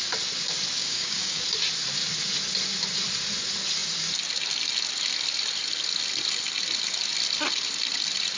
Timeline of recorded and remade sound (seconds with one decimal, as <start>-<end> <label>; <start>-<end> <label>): 0.0-0.8 recorded; 0.8-1.4 remade; 1.4-8.4 recorded

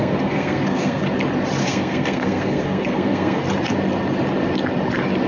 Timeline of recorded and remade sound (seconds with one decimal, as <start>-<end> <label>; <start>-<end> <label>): 0.0-1.0 remade; 1.0-1.6 recorded; 1.6-3.4 remade; 3.4-5.3 recorded

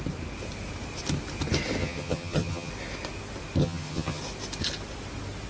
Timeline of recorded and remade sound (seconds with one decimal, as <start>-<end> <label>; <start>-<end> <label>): 0.0-1.8 recorded; 1.8-2.7 remade; 2.7-3.6 recorded; 3.6-4.2 remade; 4.2-5.5 recorded

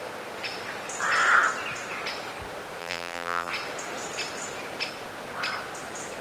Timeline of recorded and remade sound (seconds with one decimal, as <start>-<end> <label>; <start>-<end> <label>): 0.0-2.8 recorded; 2.8-3.5 remade; 3.5-6.2 recorded

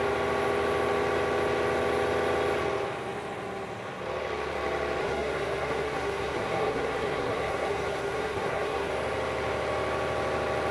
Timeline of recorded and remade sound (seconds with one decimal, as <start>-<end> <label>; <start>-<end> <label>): 0.0-5.0 recorded; 5.0-8.9 remade; 8.9-10.7 recorded

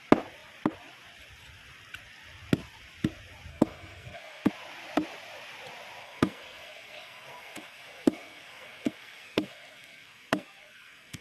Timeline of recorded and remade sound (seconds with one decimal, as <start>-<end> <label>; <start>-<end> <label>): 0.0-3.5 recorded; 3.5-4.5 remade; 4.5-6.0 recorded; 6.0-11.2 remade

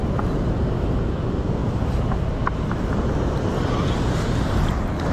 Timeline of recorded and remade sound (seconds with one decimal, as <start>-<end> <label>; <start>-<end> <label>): 0.0-5.1 recorded